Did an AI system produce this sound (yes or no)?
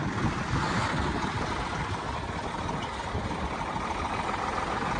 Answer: no